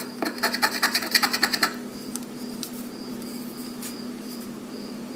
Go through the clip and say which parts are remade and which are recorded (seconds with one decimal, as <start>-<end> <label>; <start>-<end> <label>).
0.0-1.9 recorded; 1.9-5.2 remade